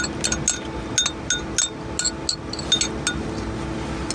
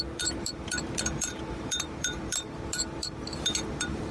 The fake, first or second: second